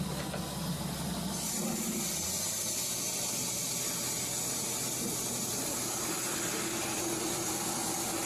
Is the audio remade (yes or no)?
no